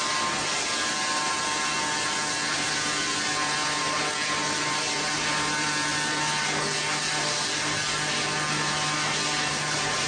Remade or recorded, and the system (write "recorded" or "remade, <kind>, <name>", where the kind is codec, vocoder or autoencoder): recorded